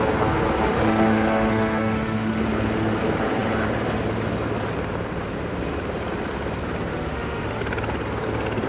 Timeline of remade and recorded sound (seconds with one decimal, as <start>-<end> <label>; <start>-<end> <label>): 0.0-0.7 recorded; 0.7-2.4 remade; 2.4-6.9 recorded; 6.9-7.6 remade; 7.6-8.7 recorded